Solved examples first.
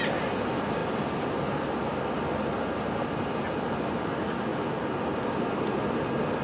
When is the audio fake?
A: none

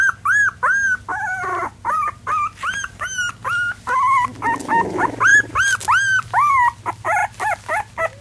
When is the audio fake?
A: 1.1-2.3 (vocoder, BigVGAN v2); 5.3-6.5

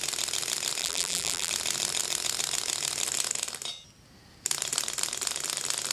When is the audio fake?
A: 0.8-1.5 (vocoder, BigVGAN v2)

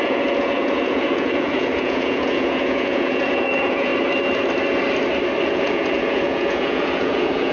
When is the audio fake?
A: 0.0-3.9 (vocoder, Vocos); 5.5-7.5

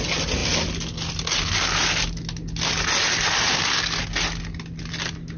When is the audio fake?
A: none

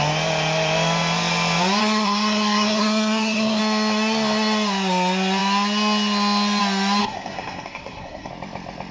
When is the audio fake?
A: 1.8-3.6 (codec, SNAC); 7.0-8.3